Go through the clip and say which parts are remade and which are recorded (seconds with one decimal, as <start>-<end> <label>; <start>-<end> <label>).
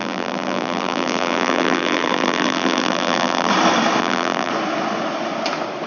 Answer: 0.0-3.5 remade; 3.5-4.0 recorded; 4.0-4.5 remade; 4.5-5.9 recorded